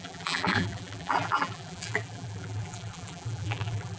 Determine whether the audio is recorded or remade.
remade